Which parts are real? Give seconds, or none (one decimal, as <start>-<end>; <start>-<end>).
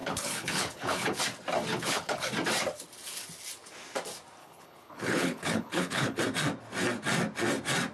1.2-1.7; 2.3-4.4; 6.2-7.9